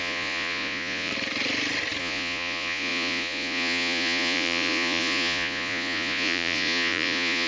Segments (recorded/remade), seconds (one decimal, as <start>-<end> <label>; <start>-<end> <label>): 0.0-1.1 remade; 1.1-2.0 recorded; 2.0-7.5 remade